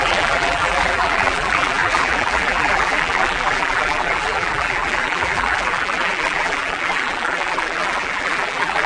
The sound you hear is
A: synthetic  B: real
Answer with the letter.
A